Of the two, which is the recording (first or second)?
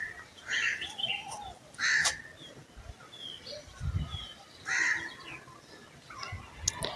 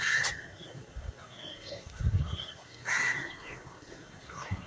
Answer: first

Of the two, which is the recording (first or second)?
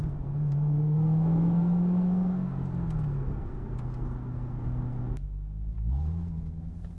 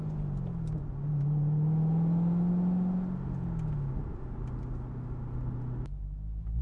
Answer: second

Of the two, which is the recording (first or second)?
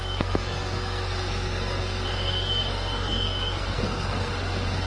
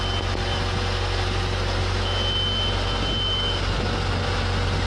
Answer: second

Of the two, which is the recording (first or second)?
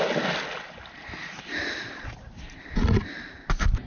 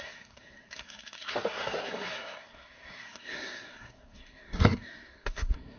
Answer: first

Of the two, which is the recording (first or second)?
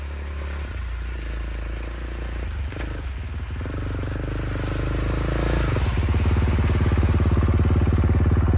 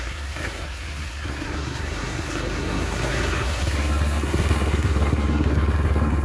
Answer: first